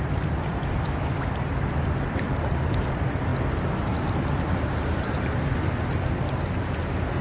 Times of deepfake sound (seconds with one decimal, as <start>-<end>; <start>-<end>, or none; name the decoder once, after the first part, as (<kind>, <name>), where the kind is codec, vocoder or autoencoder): none

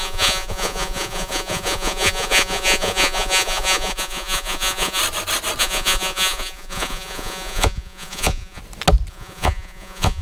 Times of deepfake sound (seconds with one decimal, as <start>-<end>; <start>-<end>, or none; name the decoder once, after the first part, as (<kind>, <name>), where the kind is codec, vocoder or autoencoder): 0.0-5.0 (vocoder, Vocos); 5.6-8.6; 9.1-10.2

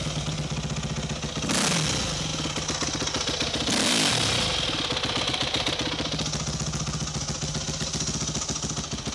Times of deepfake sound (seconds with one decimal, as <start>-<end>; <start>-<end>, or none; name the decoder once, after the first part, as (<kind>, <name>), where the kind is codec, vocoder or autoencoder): none

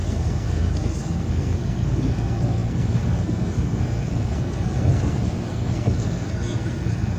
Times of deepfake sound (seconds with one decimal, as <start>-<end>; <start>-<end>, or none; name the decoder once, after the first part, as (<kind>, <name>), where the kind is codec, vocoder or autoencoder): 0.0-7.2 (codec, SNAC)

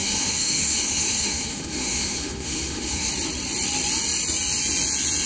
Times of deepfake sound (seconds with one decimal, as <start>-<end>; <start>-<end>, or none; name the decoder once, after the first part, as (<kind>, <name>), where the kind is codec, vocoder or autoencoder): 0.0-3.1 (autoencoder, DAC-VAE)

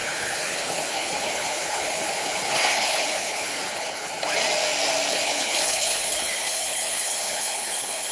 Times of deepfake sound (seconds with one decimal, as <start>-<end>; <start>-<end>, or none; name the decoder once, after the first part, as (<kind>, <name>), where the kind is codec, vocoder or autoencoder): 0.0-4.1 (codec, HILCodec); 5.1-8.1